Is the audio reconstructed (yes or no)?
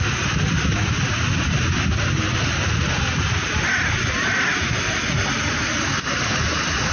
no